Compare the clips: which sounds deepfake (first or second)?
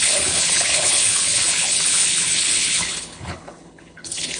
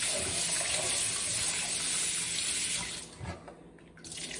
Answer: first